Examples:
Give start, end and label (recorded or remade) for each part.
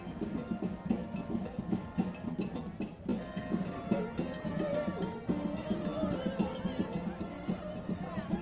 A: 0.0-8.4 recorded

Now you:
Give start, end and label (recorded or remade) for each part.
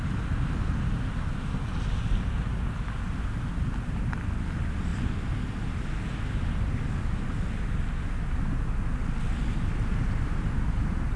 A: 0.0-11.2 recorded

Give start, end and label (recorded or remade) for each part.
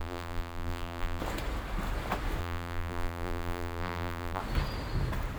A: 0.0-1.2 remade; 1.2-2.4 recorded; 2.4-4.4 remade; 4.4-5.4 recorded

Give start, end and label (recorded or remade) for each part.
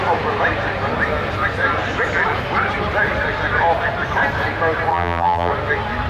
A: 0.0-4.9 recorded; 4.9-5.5 remade; 5.5-6.1 recorded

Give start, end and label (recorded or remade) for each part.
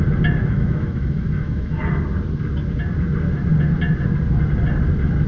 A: 0.0-0.4 recorded; 0.4-1.8 remade; 1.8-5.3 recorded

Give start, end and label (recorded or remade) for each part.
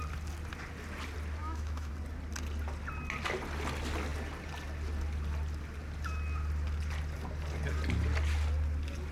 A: 0.0-1.4 recorded; 1.4-1.9 remade; 1.9-9.1 recorded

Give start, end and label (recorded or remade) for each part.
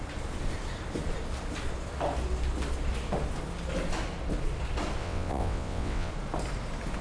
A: 0.0-5.0 recorded; 5.0-6.1 remade; 6.1-7.0 recorded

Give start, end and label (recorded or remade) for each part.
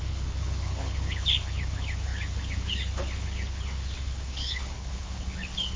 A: 0.0-5.8 remade